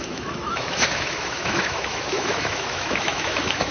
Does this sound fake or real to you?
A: fake